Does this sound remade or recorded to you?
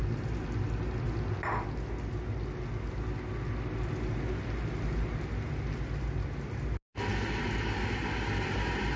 recorded